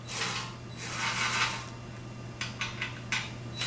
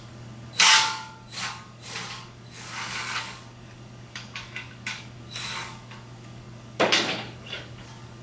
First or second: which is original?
first